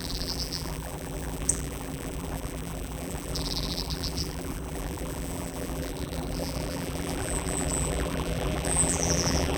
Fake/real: fake